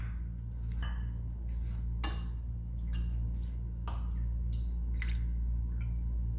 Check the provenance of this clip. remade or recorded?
recorded